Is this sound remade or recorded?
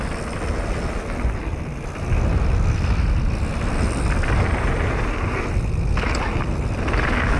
recorded